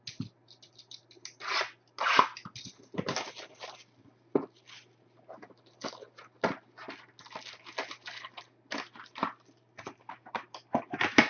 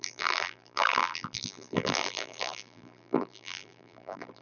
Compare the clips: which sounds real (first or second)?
first